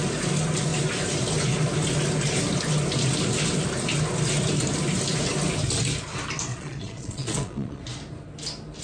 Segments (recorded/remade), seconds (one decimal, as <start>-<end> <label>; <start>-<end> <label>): 0.0-6.5 recorded; 6.5-7.8 remade; 7.8-8.8 recorded